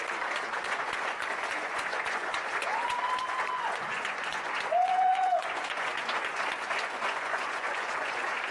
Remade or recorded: remade